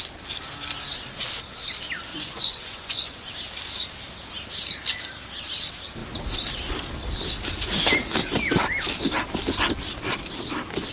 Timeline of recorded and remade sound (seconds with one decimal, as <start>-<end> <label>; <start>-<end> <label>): 0.0-2.1 recorded; 2.1-3.3 remade; 3.3-10.9 recorded